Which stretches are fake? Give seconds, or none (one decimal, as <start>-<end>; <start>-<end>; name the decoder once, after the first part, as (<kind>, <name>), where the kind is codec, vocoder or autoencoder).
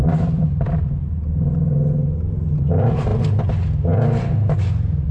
0.0-3.1 (vocoder, BigVGAN v2); 4.6-5.1